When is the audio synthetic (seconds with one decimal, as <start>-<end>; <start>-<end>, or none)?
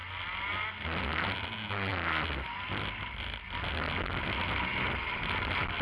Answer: none